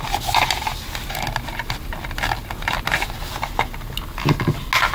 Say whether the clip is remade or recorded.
recorded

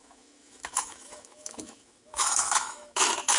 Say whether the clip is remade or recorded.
remade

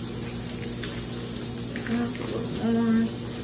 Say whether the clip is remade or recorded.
recorded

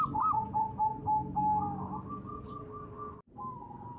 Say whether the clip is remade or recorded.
recorded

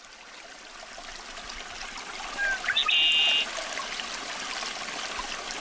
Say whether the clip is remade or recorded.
recorded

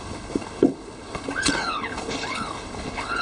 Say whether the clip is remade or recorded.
remade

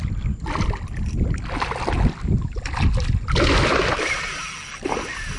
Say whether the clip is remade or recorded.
recorded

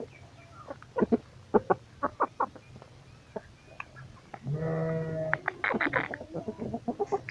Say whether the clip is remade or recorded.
recorded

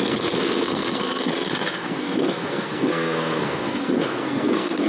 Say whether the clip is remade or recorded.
remade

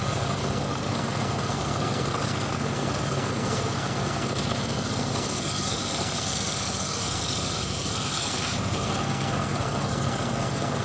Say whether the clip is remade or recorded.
remade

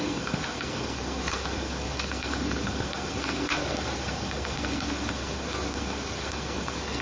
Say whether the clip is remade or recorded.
remade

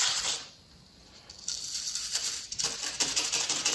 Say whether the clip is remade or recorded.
recorded